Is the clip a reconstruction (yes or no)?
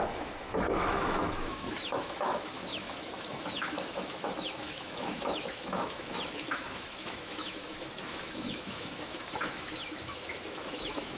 yes